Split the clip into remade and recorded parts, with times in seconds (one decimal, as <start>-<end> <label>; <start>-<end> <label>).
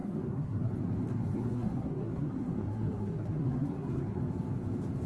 0.0-0.7 remade; 0.7-1.1 recorded; 1.1-4.2 remade; 4.2-5.1 recorded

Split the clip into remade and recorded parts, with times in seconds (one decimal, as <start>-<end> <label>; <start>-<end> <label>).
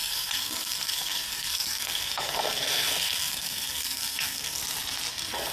0.0-4.6 remade; 4.6-5.1 recorded; 5.1-5.5 remade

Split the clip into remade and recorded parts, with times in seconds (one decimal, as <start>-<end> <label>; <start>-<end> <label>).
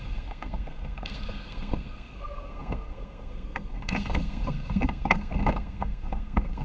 0.0-6.6 remade